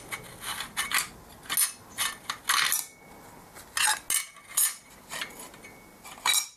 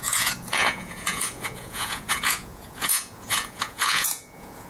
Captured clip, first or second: first